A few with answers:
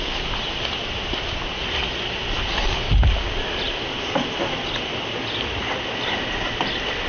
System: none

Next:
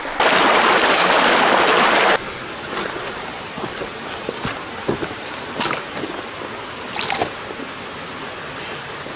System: none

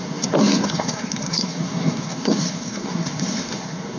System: codec, SNAC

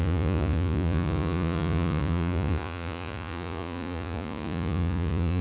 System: vocoder, Vocos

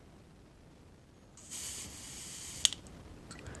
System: none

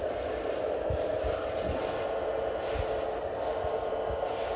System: none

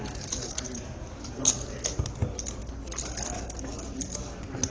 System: none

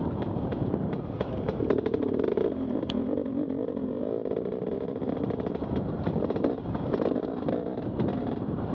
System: vocoder, BigVGAN v2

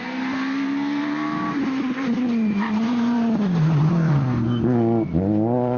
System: vocoder, BigVGAN v2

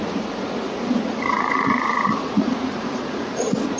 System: vocoder, Vocos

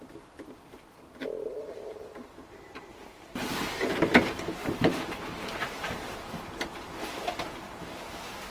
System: vocoder, BigVGAN v2